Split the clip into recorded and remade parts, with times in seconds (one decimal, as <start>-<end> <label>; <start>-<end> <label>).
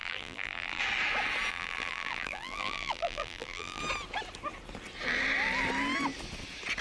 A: 0.0-0.8 remade; 0.8-1.5 recorded; 1.5-3.8 remade; 3.8-6.8 recorded